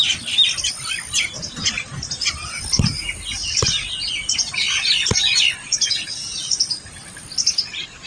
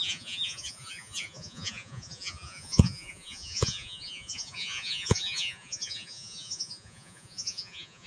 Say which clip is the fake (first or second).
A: second